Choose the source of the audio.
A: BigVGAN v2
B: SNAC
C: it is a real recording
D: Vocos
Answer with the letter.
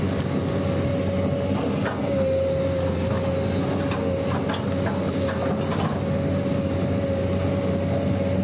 C